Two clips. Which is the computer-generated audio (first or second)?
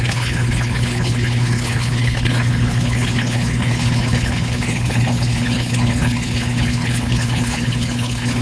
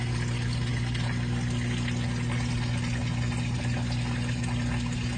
first